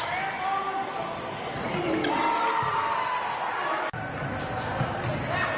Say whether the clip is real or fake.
real